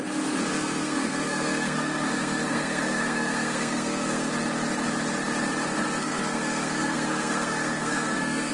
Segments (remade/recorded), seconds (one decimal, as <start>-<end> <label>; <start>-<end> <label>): 0.0-0.5 recorded; 0.5-4.3 remade; 4.3-6.0 recorded; 6.0-8.5 remade